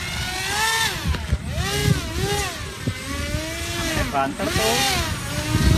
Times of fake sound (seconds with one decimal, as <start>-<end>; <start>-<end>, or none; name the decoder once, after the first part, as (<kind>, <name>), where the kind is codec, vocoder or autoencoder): none